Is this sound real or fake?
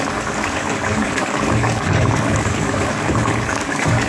fake